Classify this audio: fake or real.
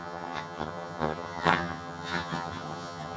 fake